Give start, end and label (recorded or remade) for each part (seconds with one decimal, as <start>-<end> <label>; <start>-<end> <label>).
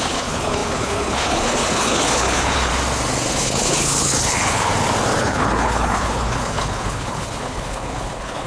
0.0-2.7 remade; 2.7-3.3 recorded; 3.3-4.7 remade; 4.7-5.2 recorded; 5.2-8.5 remade